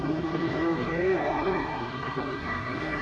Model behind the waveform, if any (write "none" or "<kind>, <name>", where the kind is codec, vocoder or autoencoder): codec, SNAC